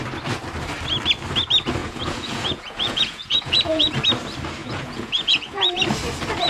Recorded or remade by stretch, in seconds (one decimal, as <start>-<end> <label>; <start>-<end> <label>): 0.0-1.8 recorded; 1.8-3.9 remade; 3.9-4.6 recorded; 4.6-5.7 remade; 5.7-6.5 recorded